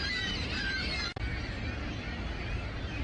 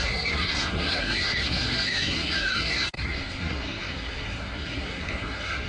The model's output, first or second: second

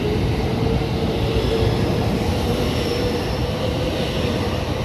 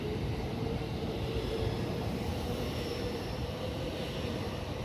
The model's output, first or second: second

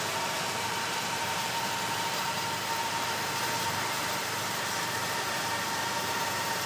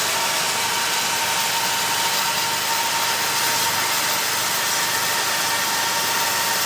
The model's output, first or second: first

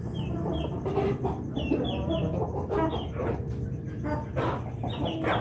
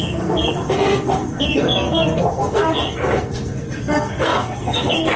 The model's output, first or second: second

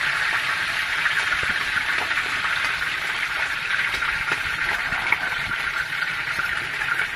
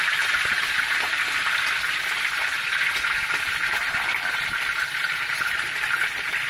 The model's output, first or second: first